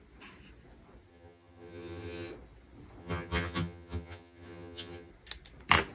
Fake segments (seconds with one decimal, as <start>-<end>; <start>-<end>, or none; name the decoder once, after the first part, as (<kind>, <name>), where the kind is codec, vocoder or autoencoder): 1.1-2.3 (vocoder, HiFi-GAN); 3.0-5.1